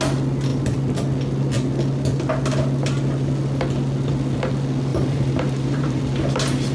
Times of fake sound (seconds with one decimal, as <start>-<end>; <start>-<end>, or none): 4.9-6.0